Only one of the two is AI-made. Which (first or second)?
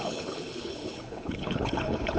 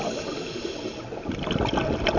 first